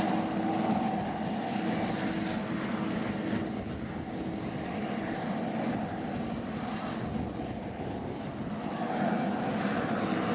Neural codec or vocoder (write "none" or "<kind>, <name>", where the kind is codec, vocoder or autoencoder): none